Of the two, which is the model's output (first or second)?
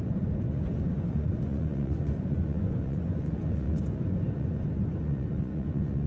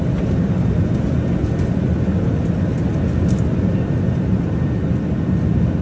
first